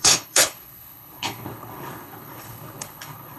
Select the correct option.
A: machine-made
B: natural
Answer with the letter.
A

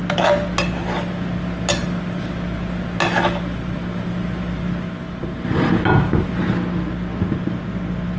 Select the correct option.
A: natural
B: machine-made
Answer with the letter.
A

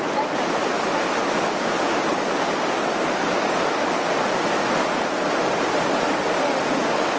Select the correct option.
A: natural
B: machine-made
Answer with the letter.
A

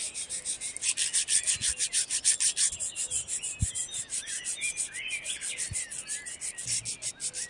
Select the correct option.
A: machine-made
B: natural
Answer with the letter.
B